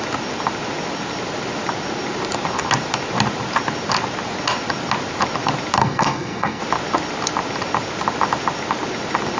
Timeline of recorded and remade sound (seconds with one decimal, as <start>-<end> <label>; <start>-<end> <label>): 0.0-5.8 recorded; 5.8-6.6 remade; 6.6-9.4 recorded